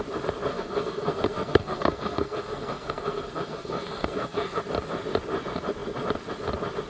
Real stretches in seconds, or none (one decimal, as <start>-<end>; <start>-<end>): 0.0-0.5; 4.6-6.9